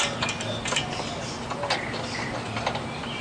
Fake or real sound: real